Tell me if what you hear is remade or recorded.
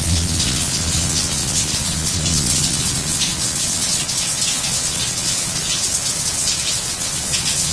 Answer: remade